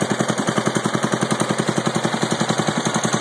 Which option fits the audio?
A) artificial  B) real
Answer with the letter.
A